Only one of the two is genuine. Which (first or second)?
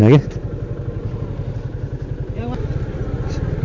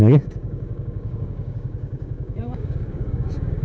first